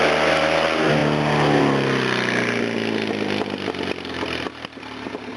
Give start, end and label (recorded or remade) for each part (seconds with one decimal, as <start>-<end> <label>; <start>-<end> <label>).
0.0-5.4 recorded